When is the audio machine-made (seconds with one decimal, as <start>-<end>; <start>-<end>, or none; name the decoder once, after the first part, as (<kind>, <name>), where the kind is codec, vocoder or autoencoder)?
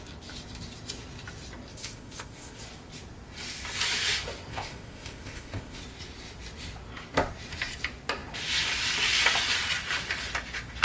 1.7-2.6 (codec, ZipCodec); 4.5-5.8